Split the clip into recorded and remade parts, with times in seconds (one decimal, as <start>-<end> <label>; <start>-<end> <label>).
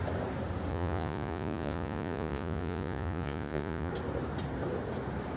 0.0-0.7 recorded; 0.7-3.9 remade; 3.9-5.4 recorded